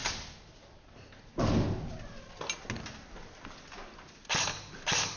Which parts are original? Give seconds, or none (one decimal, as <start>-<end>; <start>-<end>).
0.0-5.2